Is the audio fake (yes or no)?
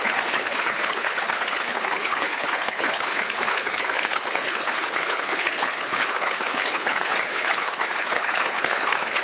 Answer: yes